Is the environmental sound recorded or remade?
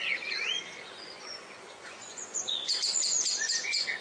remade